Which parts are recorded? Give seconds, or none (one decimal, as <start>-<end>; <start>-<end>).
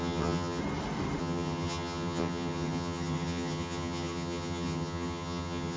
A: 0.6-1.2